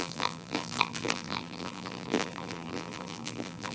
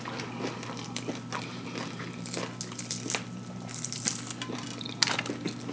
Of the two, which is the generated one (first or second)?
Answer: first